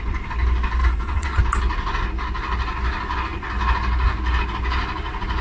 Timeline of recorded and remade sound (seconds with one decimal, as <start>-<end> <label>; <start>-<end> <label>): 0.0-0.8 recorded; 0.8-1.4 remade; 1.4-5.4 recorded